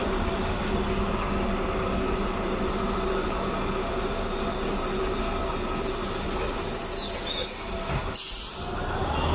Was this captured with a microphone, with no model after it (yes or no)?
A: yes